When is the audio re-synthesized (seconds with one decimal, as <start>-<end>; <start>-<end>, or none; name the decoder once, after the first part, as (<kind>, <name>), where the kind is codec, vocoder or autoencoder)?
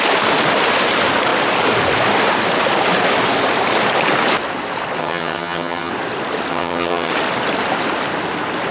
5.0-5.9 (vocoder, HiFi-GAN); 6.5-7.1